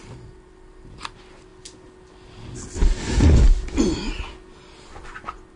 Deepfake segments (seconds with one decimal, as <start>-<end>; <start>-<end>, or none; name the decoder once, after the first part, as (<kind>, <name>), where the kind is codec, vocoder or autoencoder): none